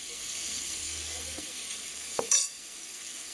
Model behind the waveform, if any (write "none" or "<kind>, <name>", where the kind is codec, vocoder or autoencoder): codec, SNAC